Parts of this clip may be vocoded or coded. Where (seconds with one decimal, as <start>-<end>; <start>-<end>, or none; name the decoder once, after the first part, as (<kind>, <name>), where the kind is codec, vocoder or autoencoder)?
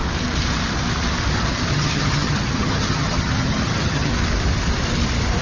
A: 1.7-4.1 (vocoder, HiFi-GAN)